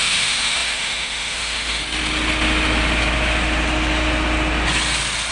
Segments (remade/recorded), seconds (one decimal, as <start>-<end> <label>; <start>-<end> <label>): 0.0-1.8 remade; 1.8-5.3 recorded